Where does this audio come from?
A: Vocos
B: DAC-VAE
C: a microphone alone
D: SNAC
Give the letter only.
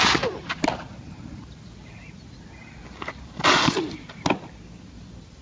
C